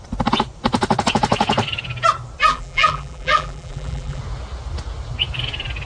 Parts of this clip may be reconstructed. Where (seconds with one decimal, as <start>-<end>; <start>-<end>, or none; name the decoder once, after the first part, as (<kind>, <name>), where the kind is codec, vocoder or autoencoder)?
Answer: 2.5-4.2 (vocoder, BigVGAN v2)